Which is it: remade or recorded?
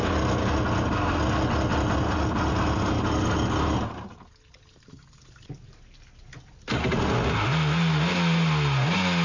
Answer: recorded